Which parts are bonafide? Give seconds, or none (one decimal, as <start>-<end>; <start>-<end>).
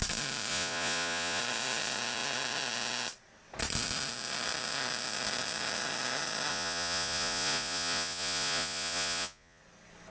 0.0-0.5; 1.4-6.5; 9.6-10.1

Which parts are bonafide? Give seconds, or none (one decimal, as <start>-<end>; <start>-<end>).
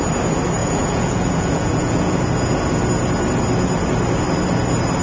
0.0-0.6; 2.2-5.0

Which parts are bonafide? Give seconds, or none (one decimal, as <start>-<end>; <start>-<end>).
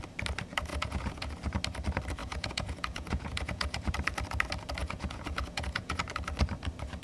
0.0-0.7; 1.3-2.2; 3.9-4.8; 6.0-7.0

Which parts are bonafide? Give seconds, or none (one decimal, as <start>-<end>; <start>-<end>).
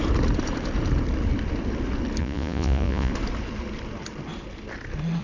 0.0-2.2; 3.1-5.2